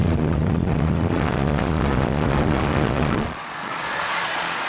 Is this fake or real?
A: fake